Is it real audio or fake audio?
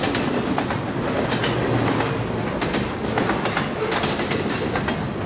real